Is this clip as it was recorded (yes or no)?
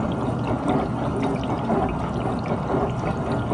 yes